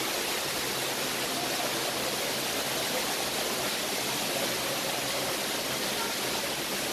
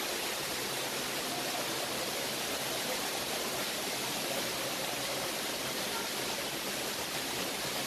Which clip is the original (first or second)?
first